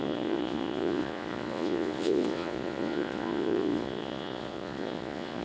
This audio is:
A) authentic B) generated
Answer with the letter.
B